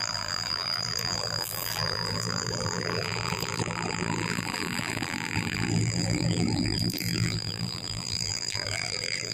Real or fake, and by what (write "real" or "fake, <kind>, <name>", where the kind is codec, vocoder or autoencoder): fake, vocoder, BigVGAN v2